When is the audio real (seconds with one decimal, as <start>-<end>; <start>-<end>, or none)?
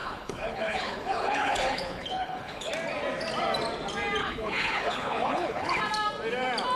2.7-4.2; 5.8-6.8